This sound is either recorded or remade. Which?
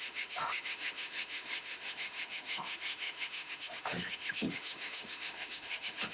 remade